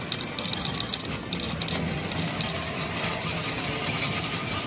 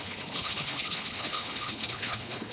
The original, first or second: first